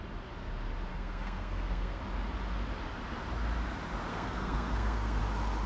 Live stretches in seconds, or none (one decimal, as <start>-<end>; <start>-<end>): 0.0-0.9; 2.0-4.1; 5.2-5.7